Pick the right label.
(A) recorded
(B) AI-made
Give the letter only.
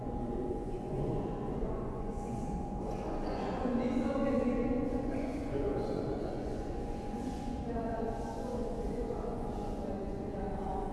B